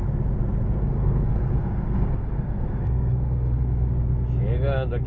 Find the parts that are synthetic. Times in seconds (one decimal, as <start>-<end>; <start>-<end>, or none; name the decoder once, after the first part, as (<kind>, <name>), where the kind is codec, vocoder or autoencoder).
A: 0.8-3.9 (codec, SNAC)